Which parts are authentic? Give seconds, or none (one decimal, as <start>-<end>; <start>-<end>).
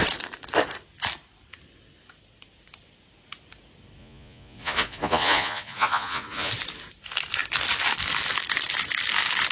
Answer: 0.0-4.0; 6.5-9.5